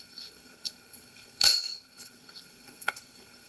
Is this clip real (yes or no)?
no